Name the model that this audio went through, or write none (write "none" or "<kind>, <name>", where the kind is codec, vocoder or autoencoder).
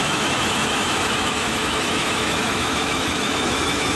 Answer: autoencoder, DAC-VAE